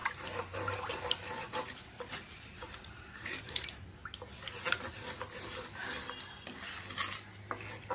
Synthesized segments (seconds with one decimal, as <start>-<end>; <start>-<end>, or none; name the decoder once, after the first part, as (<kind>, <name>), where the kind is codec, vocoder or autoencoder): 0.0-4.0 (vocoder, BigVGAN v2); 4.9-5.8